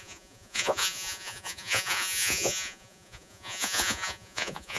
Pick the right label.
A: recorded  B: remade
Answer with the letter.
B